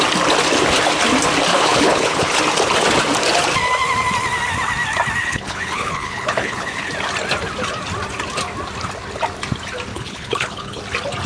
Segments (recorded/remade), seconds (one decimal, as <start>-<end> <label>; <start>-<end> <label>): 0.0-1.5 recorded; 1.5-2.4 remade; 2.4-5.2 recorded; 5.2-6.9 remade; 6.9-9.9 recorded; 9.9-10.8 remade; 10.8-11.3 recorded